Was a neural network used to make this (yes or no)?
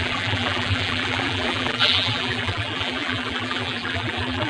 yes